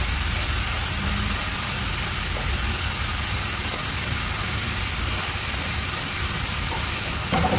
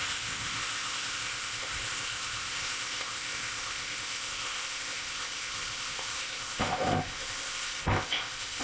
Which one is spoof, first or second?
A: second